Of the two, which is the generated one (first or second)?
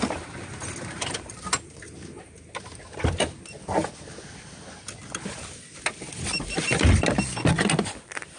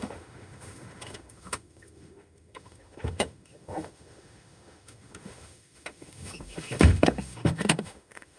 second